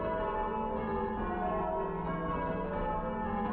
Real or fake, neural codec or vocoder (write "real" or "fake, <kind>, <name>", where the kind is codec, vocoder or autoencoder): real